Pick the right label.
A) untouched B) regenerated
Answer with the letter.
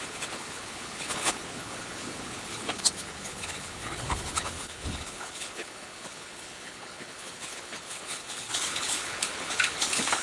B